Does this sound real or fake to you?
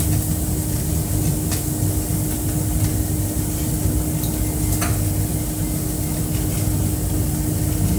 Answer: real